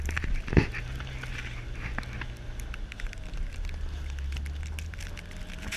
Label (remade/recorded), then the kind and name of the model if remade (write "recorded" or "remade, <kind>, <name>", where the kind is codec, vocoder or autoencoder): recorded